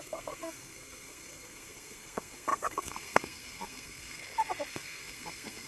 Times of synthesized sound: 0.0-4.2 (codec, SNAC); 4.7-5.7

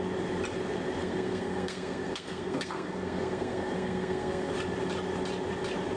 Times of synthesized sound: 1.0-4.5 (codec, SNAC)

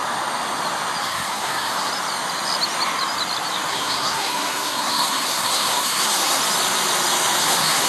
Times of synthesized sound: 1.0-1.9 (codec, SNAC); 3.7-6.4; 7.4-7.9